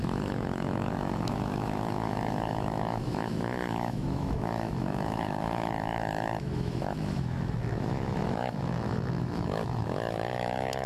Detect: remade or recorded remade